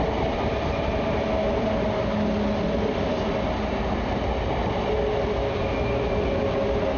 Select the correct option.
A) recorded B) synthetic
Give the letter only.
A